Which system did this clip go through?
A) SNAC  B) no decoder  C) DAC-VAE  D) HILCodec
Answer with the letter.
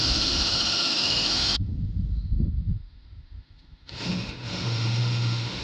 C